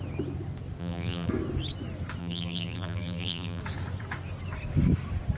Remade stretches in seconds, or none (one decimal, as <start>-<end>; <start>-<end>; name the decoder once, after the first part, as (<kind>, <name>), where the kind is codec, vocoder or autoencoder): 0.8-1.3 (vocoder, BigVGAN v2); 2.2-3.6